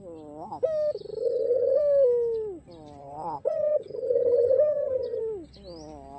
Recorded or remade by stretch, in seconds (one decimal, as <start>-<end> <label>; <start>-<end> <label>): 0.0-1.2 recorded; 1.2-1.8 remade; 1.8-3.0 recorded; 3.0-5.2 remade; 5.2-6.2 recorded